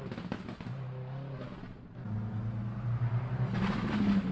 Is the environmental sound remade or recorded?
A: recorded